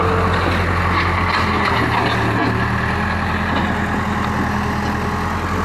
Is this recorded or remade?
recorded